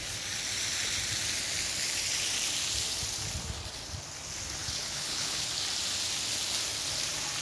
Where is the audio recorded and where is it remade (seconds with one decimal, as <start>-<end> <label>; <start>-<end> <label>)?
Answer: 0.0-4.6 recorded; 4.6-5.5 remade; 5.5-7.4 recorded